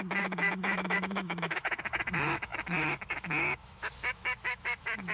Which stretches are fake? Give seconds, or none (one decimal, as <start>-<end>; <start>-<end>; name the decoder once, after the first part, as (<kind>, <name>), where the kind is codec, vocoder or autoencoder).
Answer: 0.0-5.1 (autoencoder, DAC-VAE)